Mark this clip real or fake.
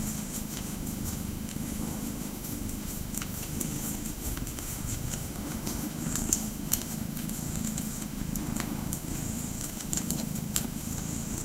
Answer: fake